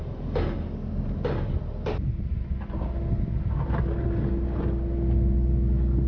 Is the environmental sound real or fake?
real